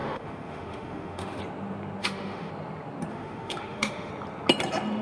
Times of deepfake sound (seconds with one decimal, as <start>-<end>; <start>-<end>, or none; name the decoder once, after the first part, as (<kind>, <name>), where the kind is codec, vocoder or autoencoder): 0.0-1.4 (autoencoder, DAC-VAE); 2.0-2.5; 3.1-4.1